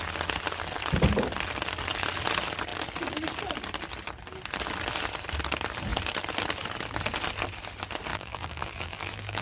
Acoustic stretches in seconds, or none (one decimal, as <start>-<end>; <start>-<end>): 0.0-8.1